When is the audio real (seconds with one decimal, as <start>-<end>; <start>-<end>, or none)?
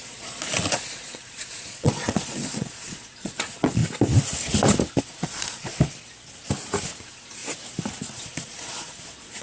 3.8-5.0; 5.7-7.0; 7.4-8.1